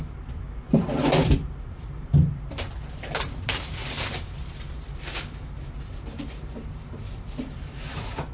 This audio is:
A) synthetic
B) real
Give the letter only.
A